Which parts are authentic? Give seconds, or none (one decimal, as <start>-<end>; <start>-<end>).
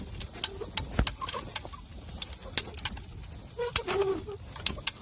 0.0-5.0